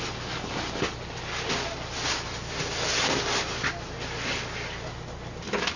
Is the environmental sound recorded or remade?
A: recorded